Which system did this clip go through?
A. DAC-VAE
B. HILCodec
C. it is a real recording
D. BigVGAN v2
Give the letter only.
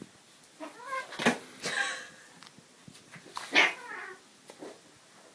C